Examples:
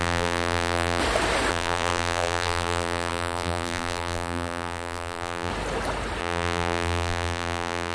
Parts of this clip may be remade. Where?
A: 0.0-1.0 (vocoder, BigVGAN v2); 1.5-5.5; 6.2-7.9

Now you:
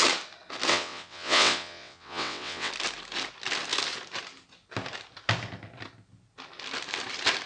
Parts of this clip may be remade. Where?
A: 0.7-2.7 (vocoder, WaveNeXt)

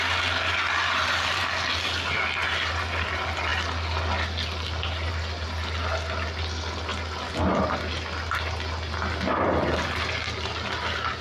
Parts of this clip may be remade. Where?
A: none

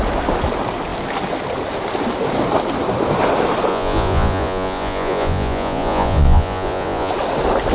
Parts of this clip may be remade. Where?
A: 3.7-7.1 (vocoder, Vocos)

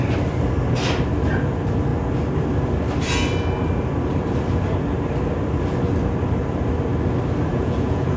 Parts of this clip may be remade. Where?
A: 7.5-8.2 (vocoder, Vocos)

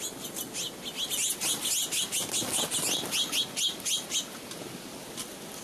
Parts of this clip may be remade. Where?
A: none